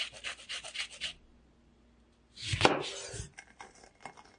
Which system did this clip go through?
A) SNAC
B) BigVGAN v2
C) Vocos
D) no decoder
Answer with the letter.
D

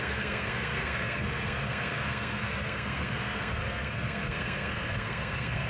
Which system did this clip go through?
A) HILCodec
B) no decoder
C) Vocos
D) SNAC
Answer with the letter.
D